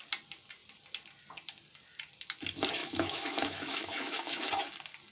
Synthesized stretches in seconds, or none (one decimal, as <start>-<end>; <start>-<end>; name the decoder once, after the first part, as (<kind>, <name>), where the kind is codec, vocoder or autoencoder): 2.8-4.5 (autoencoder, DAC-VAE)